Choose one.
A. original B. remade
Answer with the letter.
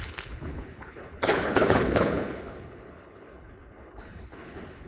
B